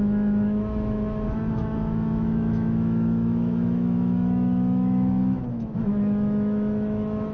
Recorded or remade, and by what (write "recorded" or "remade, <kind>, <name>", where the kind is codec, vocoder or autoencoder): remade, autoencoder, DAC-VAE